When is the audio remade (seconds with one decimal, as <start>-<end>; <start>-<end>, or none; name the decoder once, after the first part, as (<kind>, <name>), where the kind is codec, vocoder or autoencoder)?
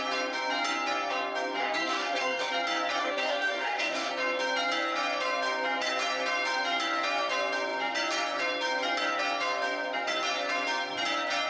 1.6-2.5 (codec, DAC); 3.0-4.1